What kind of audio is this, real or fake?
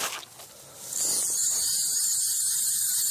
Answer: real